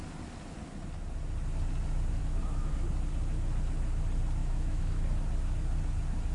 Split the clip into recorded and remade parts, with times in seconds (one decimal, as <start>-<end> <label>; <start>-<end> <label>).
0.0-2.2 recorded; 2.2-2.7 remade; 2.7-4.4 recorded; 4.4-5.0 remade; 5.0-6.3 recorded